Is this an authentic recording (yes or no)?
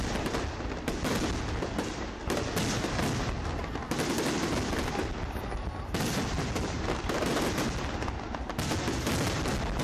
yes